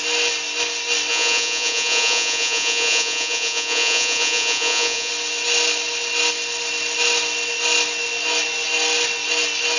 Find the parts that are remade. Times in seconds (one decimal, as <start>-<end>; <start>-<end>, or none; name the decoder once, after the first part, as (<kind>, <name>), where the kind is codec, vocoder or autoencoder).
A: 1.1-5.1 (vocoder, Vocos)